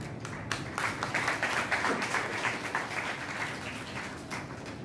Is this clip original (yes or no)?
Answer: yes